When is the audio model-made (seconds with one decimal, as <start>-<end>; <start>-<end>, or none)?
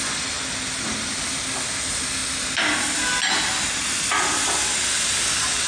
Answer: none